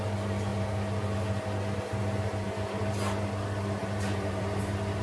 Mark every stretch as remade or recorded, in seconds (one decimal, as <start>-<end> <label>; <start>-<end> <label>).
0.0-3.8 recorded; 3.8-4.6 remade; 4.6-5.0 recorded